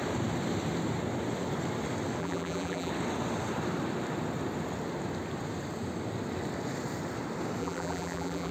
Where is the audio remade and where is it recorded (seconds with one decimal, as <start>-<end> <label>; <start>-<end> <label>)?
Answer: 0.0-2.2 recorded; 2.2-2.9 remade; 2.9-7.6 recorded; 7.6-8.5 remade